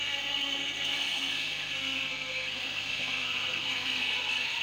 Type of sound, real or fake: fake